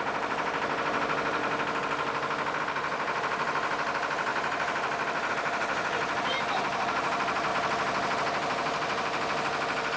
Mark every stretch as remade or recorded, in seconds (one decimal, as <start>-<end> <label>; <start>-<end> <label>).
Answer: 0.0-1.4 remade; 1.4-2.6 recorded; 2.6-7.5 remade; 7.5-10.0 recorded